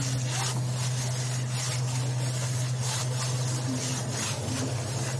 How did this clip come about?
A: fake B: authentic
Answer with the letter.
B